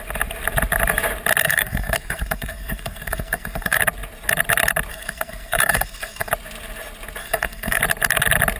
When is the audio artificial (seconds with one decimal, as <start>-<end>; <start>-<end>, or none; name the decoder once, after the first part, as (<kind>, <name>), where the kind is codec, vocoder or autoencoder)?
1.4-3.8 (codec, SNAC); 4.9-6.3; 7.2-7.8